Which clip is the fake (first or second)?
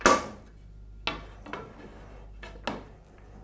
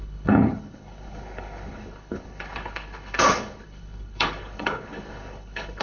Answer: second